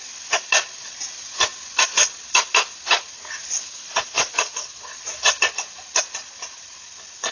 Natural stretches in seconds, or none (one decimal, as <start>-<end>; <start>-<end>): 0.0-3.7; 5.0-7.3